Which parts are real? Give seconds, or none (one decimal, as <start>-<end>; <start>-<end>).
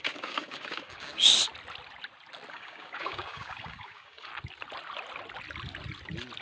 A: 1.3-2.5; 4.3-6.4